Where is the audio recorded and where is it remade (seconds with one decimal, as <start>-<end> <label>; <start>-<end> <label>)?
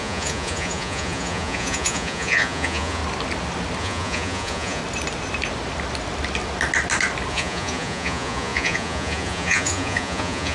0.0-3.0 remade; 3.0-3.8 recorded; 3.8-4.8 remade; 4.8-7.3 recorded; 7.3-10.5 remade